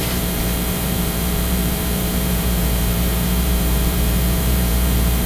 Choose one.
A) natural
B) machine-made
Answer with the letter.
B